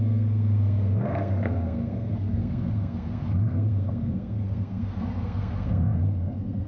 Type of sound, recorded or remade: remade